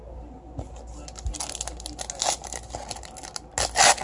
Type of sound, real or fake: real